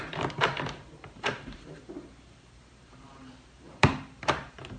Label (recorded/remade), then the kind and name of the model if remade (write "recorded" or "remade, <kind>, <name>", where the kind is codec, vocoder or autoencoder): remade, vocoder, BigVGAN v2